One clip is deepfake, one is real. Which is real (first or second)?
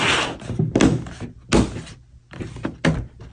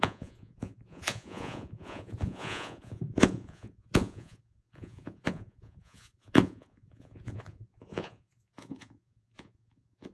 first